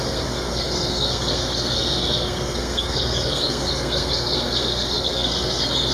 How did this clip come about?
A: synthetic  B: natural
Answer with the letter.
A